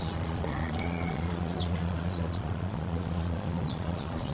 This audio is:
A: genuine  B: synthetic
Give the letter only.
B